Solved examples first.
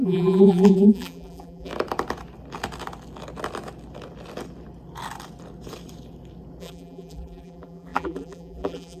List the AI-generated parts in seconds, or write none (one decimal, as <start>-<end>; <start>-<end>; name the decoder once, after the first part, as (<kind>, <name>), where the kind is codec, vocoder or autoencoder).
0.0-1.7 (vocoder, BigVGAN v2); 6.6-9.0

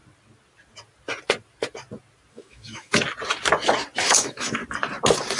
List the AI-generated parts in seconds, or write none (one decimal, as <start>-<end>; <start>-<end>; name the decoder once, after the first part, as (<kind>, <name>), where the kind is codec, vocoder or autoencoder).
2.3-2.9 (autoencoder, DAC-VAE); 4.0-4.6

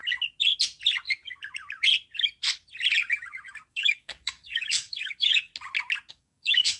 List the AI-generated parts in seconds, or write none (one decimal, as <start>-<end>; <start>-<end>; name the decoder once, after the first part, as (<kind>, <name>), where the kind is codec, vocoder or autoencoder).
3.7-5.5 (codec, DAC); 6.1-6.8

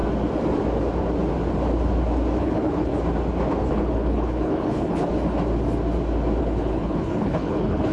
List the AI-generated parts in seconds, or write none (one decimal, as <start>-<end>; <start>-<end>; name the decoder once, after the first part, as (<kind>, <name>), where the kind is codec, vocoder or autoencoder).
2.4-2.9 (codec, HILCodec); 3.7-5.1; 6.4-7.9

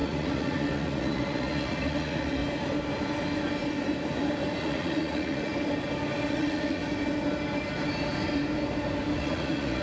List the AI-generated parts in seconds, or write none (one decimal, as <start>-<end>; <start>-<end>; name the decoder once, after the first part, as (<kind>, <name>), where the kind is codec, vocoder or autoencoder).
0.0-2.4 (vocoder, Vocos); 4.6-5.5; 6.3-6.8; 9.2-9.8

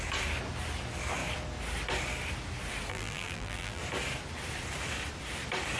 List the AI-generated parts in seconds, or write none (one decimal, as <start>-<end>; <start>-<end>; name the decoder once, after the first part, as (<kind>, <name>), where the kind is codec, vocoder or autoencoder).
2.9-3.8 (vocoder, BigVGAN v2)

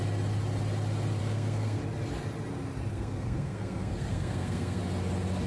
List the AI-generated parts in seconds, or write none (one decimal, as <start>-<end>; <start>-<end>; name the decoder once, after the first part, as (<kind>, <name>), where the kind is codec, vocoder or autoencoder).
1.2-1.8 (codec, SNAC); 2.9-4.8

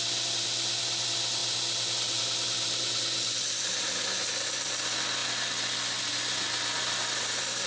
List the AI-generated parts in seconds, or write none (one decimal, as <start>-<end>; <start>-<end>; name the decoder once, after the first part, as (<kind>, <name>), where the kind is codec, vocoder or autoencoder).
none